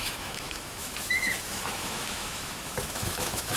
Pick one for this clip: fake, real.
fake